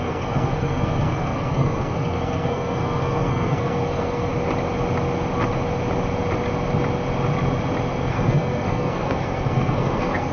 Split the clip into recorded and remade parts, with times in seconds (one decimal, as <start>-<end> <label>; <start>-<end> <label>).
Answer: 0.0-4.3 remade; 4.3-8.0 recorded; 8.0-10.3 remade